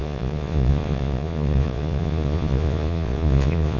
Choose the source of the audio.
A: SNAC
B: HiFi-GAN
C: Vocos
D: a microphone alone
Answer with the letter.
C